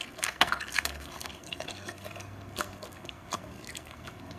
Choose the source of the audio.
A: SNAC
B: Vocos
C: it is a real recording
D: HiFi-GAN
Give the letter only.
A